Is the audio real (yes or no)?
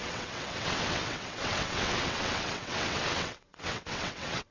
no